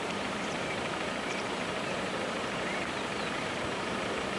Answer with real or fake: fake